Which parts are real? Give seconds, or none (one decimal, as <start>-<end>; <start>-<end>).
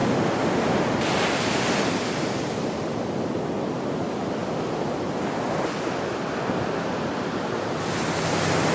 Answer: 0.0-8.7